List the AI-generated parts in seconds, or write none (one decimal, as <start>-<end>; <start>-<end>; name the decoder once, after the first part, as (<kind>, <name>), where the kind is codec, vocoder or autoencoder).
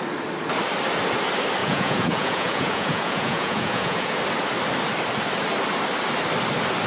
1.6-4.2 (vocoder, Vocos)